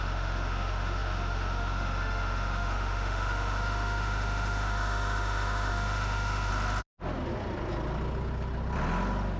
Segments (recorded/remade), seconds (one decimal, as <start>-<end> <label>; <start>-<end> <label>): 0.0-6.5 remade; 6.5-9.4 recorded